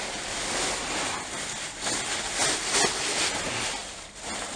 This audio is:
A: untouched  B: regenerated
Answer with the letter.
A